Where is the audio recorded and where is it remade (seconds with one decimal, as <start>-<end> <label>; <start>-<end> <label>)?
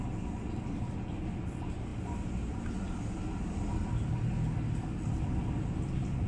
0.0-6.3 recorded